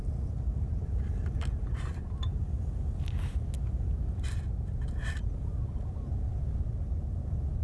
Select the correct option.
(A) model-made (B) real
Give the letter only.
B